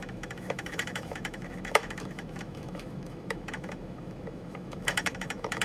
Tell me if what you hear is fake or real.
fake